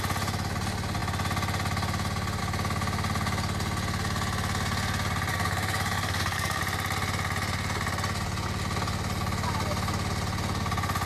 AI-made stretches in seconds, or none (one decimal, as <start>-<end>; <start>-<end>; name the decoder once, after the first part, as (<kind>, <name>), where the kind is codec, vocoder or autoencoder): 5.3-6.6 (codec, SNAC)